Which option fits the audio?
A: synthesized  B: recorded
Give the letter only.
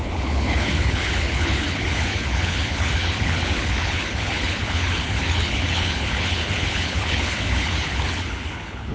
A